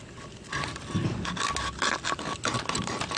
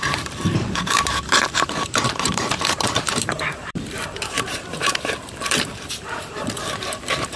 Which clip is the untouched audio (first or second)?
first